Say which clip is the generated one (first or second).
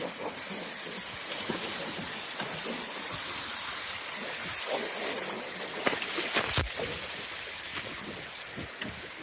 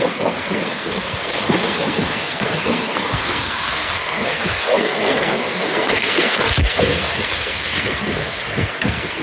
second